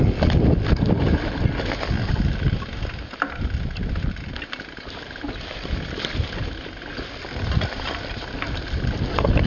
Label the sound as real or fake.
real